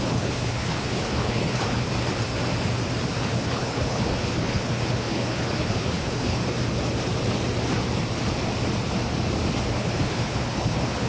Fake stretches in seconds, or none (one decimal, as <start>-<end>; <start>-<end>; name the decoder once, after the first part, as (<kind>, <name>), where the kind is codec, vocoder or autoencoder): 0.0-1.9 (codec, HILCodec); 3.1-6.4; 9.8-11.1